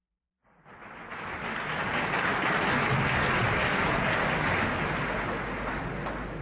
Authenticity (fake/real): real